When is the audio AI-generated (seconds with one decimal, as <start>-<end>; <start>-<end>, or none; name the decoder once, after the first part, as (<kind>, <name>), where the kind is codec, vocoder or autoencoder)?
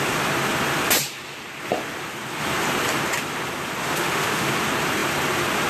3.8-4.5 (autoencoder, DAC-VAE)